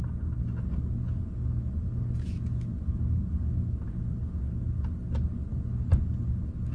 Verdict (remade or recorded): recorded